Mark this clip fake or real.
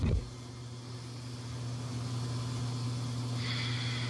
real